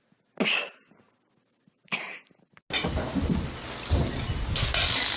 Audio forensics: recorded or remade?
recorded